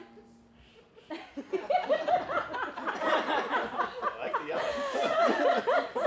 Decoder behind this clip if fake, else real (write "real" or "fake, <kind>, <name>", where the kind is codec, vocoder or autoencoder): real